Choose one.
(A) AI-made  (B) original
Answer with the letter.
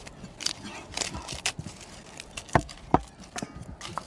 B